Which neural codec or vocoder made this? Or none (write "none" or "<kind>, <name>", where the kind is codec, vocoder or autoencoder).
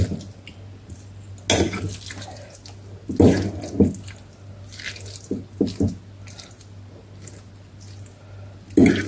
none